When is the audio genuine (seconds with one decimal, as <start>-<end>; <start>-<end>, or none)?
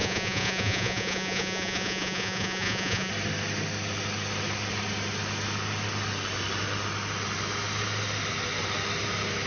3.1-9.5